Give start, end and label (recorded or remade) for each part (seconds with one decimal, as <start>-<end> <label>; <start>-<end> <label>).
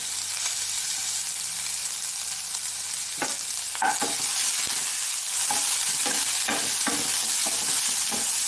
0.0-8.5 recorded